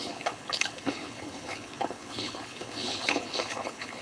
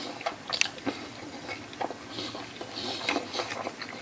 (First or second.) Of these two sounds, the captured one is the second